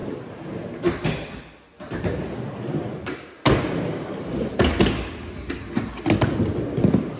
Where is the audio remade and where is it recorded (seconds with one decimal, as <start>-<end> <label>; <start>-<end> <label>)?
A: 0.0-7.2 recorded